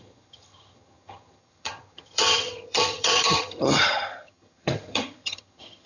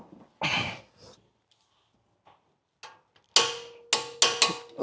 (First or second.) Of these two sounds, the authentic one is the second